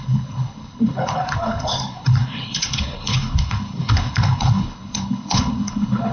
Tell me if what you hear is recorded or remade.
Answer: remade